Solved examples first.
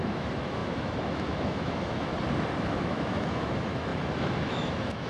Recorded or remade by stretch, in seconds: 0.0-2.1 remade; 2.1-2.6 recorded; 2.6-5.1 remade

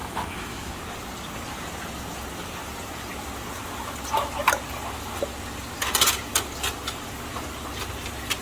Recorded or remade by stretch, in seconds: 0.0-0.7 remade; 0.7-8.4 recorded